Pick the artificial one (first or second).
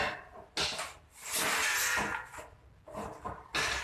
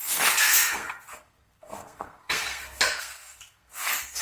second